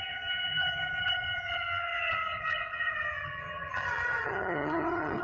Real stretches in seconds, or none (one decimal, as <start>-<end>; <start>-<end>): none